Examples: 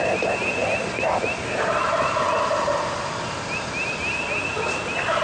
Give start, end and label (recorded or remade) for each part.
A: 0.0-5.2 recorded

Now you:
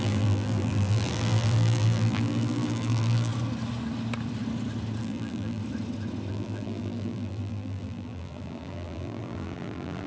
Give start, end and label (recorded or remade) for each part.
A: 0.0-3.3 remade; 3.3-5.0 recorded; 5.0-5.6 remade; 5.6-6.3 recorded; 6.3-10.1 remade

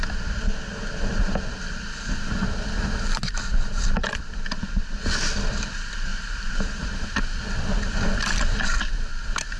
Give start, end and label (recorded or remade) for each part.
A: 0.0-1.1 recorded; 1.1-3.2 remade; 3.2-6.1 recorded; 6.1-7.2 remade; 7.2-9.6 recorded

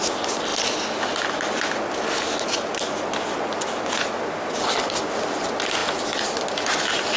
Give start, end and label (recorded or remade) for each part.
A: 0.0-5.8 recorded; 5.8-6.4 remade; 6.4-7.2 recorded

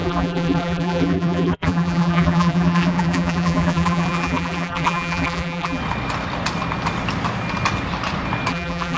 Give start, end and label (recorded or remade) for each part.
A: 0.0-5.8 remade; 5.8-8.5 recorded; 8.5-9.0 remade

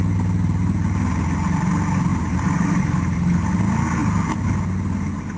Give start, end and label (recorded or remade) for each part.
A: 0.0-2.1 recorded; 2.1-3.6 remade; 3.6-5.4 recorded

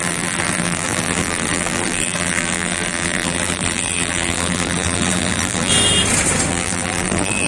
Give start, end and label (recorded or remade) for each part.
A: 0.0-5.7 remade; 5.7-6.5 recorded; 6.5-7.5 remade

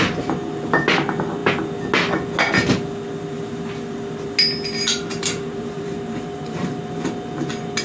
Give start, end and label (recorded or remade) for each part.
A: 0.0-5.1 recorded; 5.1-6.8 remade; 6.8-7.8 recorded